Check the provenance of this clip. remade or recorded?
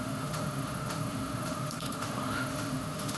remade